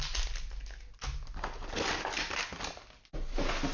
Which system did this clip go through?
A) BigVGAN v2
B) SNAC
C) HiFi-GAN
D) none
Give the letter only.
D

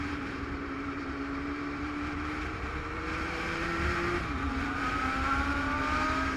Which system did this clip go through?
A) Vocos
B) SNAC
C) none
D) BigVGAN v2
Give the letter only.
D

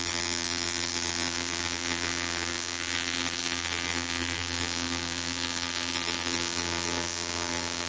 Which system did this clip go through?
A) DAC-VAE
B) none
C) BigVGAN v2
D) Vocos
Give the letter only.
C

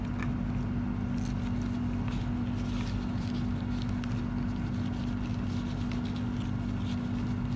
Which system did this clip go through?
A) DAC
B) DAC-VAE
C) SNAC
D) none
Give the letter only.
D